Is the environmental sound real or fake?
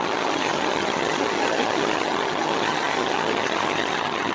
fake